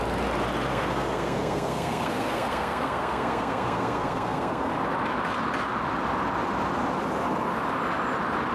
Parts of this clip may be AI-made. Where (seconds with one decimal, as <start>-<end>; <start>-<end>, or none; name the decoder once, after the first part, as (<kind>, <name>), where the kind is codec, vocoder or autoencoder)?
0.7-4.7 (codec, SNAC)